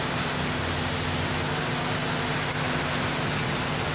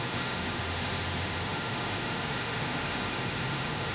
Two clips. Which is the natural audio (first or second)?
first